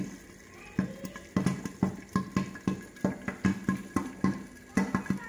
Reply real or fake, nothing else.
real